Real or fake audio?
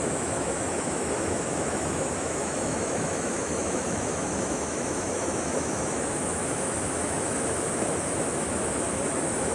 fake